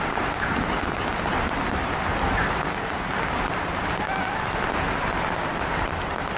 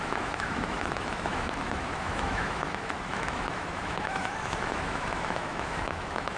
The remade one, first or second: second